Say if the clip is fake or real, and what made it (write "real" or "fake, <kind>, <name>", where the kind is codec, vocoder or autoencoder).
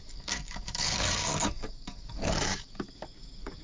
fake, codec, DAC